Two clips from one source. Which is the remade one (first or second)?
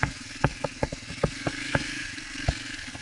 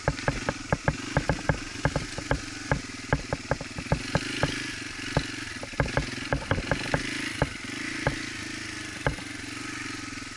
first